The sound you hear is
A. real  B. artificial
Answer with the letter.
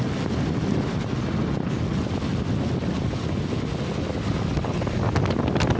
A